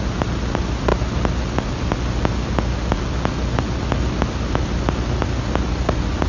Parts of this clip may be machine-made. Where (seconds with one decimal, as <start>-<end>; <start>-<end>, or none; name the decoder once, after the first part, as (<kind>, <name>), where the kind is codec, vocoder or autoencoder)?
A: none

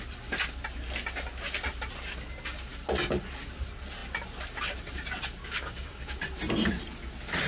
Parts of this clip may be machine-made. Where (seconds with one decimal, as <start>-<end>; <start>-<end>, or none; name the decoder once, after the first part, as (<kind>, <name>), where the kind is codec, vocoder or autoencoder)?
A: 5.4-6.2 (codec, DAC)

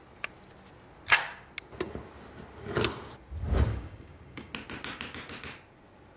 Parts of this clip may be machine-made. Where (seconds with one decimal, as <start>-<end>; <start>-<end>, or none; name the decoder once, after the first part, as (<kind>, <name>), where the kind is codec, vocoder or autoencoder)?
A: 3.7-4.5 (codec, DAC)

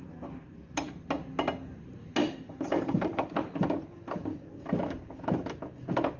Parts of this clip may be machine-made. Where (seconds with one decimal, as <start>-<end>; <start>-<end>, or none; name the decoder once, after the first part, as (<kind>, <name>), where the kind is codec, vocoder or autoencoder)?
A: 2.2-4.5 (vocoder, BigVGAN v2)

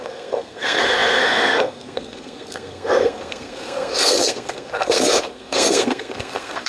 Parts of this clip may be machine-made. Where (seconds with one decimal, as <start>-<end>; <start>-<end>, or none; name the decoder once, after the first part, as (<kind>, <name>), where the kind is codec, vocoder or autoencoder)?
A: 0.0-6.7 (codec, SNAC)